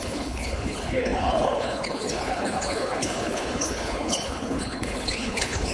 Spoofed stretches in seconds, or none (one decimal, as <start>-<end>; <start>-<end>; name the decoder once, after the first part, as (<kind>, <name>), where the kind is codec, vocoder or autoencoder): 0.0-5.7 (codec, HILCodec)

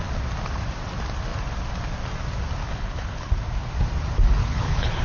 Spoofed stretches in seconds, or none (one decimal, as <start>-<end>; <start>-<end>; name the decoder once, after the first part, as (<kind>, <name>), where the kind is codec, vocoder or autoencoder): 2.6-3.3 (codec, HILCodec); 4.4-5.0

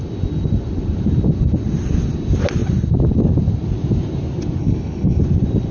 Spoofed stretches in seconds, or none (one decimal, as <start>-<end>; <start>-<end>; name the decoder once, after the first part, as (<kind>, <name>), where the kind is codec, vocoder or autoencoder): 4.6-5.2 (codec, HILCodec)

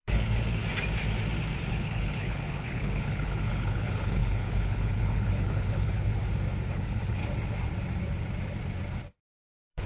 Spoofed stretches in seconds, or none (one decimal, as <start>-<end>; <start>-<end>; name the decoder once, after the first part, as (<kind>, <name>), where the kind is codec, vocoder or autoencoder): 0.0-0.6 (codec, HILCodec); 1.7-6.1; 6.7-7.2; 9.2-9.9

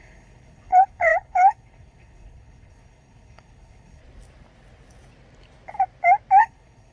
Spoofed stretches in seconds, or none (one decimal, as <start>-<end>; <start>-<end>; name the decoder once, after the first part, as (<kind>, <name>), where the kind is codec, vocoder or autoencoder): 0.0-4.0 (codec, HILCodec); 6.4-6.9

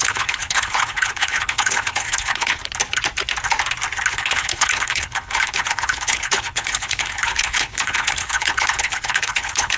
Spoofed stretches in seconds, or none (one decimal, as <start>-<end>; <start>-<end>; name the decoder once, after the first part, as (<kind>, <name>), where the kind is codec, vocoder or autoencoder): 0.0-2.6 (codec, HILCodec); 4.1-9.8